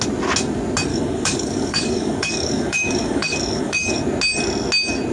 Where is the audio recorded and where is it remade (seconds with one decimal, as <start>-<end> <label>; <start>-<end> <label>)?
0.0-0.9 recorded; 0.9-4.0 remade; 4.0-5.1 recorded